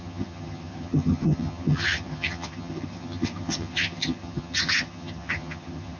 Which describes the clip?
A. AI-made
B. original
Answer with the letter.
A